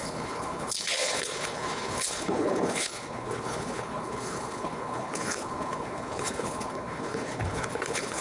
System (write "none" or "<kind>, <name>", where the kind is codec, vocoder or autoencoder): codec, HILCodec